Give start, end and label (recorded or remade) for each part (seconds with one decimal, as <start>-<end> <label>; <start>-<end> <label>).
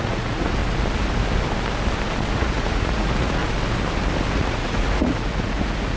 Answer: 0.0-0.6 remade; 0.6-2.3 recorded; 2.3-3.4 remade; 3.4-4.3 recorded; 4.3-6.0 remade